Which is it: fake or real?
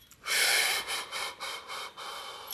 fake